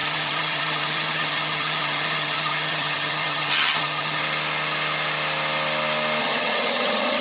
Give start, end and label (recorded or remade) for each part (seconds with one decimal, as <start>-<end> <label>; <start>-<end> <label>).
0.0-4.2 remade; 4.2-6.2 recorded; 6.2-7.2 remade